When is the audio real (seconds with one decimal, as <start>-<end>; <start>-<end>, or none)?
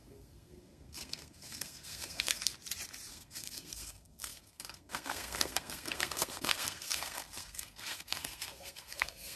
2.5-3.1